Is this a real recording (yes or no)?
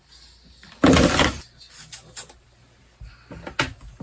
yes